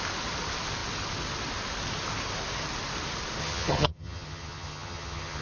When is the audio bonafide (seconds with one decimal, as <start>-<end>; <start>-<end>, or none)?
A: 0.0-3.4